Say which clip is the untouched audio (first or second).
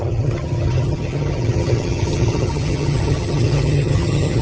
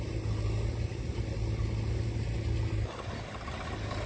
second